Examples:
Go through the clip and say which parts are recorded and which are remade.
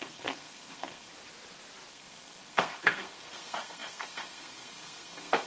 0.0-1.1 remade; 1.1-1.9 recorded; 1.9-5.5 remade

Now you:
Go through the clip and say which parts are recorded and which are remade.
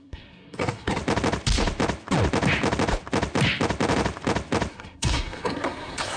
0.0-1.0 remade; 1.0-4.7 recorded; 4.7-6.2 remade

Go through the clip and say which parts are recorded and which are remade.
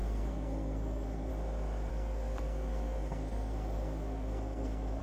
0.0-1.3 remade; 1.3-1.9 recorded; 1.9-5.0 remade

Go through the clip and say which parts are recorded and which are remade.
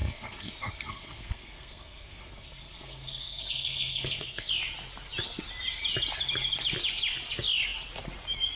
0.0-4.5 remade; 4.5-8.6 recorded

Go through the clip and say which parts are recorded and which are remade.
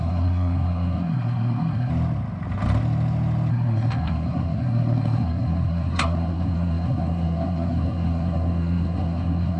0.0-1.9 remade; 1.9-3.5 recorded; 3.5-9.6 remade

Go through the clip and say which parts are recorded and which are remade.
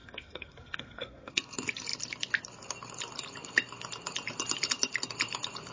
0.0-1.5 remade; 1.5-5.7 recorded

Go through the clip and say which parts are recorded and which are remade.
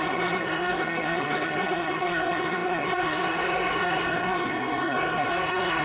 0.0-5.8 remade